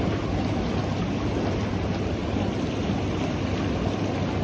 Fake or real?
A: real